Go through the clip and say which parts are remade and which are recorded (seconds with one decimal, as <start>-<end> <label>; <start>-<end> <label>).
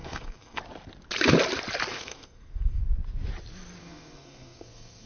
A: 0.0-0.6 remade; 0.6-1.9 recorded; 1.9-2.8 remade; 2.8-3.8 recorded; 3.8-5.1 remade